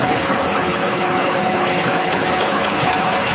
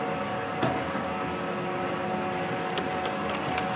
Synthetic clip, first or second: first